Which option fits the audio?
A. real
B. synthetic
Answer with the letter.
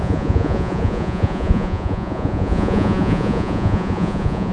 B